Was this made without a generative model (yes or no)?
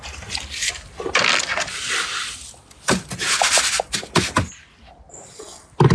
yes